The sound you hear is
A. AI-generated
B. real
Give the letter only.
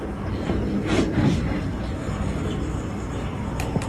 B